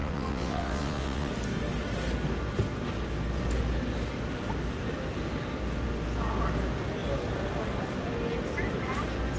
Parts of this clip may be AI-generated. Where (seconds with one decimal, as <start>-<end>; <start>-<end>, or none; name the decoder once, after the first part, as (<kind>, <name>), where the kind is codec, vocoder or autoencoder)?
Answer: 0.0-1.3 (vocoder, WaveNeXt)